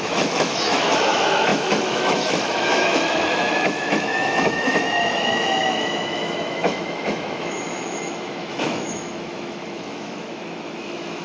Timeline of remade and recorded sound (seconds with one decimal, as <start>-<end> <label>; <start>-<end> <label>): 0.0-11.2 remade